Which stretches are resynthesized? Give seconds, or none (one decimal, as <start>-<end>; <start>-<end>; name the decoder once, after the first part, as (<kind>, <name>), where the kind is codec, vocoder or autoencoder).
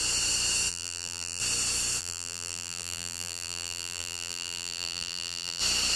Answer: 0.7-1.4 (vocoder, BigVGAN v2); 2.0-5.6